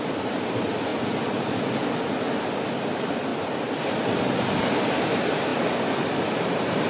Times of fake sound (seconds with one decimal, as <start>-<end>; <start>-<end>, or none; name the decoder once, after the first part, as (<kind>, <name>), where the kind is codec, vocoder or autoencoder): none